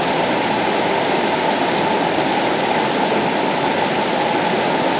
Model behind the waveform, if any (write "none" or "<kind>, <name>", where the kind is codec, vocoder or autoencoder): none